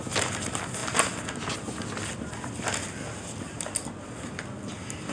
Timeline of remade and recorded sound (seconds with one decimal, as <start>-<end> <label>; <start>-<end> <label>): 0.0-5.1 recorded

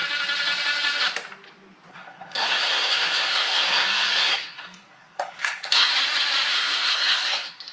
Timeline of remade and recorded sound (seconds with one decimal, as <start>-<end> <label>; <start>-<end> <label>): 0.0-1.9 recorded; 1.9-5.9 remade; 5.9-6.5 recorded; 6.5-7.7 remade

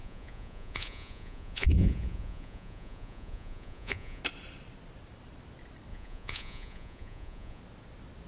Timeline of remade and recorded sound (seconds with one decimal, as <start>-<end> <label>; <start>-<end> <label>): 0.0-4.2 remade; 4.2-5.9 recorded; 5.9-7.6 remade; 7.6-8.3 recorded

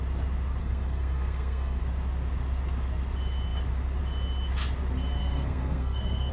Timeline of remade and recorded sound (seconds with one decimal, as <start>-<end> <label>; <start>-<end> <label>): 0.0-0.6 recorded; 0.6-1.8 remade; 1.8-5.2 recorded; 5.2-6.3 remade

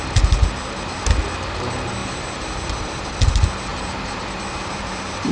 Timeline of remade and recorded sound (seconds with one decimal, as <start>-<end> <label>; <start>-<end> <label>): 0.0-2.0 recorded; 2.0-3.1 remade; 3.1-3.7 recorded; 3.7-5.3 remade

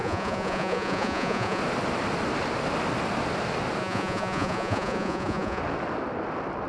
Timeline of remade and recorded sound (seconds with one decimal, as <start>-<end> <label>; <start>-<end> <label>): 0.0-1.6 remade; 1.6-3.8 recorded; 3.8-5.6 remade; 5.6-6.7 recorded